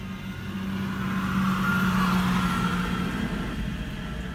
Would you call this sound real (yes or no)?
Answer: yes